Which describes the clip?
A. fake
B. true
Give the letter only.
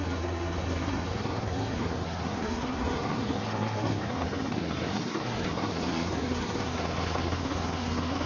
A